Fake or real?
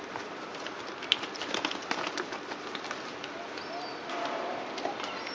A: real